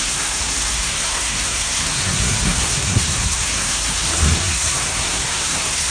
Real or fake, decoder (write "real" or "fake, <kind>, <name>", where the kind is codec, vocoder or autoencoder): fake, codec, SNAC